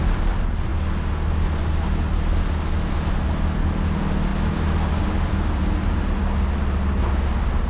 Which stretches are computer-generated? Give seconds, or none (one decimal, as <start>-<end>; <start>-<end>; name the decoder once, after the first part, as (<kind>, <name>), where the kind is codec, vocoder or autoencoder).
none